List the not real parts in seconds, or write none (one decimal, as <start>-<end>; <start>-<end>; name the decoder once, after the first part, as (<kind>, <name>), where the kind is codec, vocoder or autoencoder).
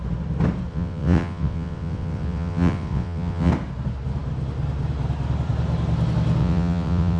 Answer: 0.7-3.5 (vocoder, WaveNeXt); 6.4-7.2